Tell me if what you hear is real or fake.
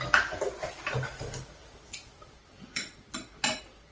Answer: real